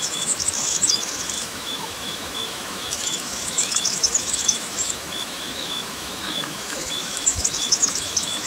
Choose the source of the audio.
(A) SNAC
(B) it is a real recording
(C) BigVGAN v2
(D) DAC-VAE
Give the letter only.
D